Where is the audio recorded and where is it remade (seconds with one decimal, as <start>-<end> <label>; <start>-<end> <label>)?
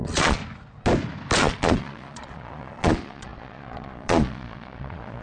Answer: 0.0-0.4 remade; 0.4-1.4 recorded; 1.4-5.2 remade